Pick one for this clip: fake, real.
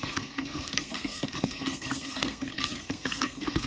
fake